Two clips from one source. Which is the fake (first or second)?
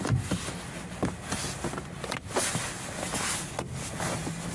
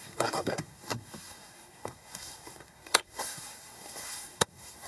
second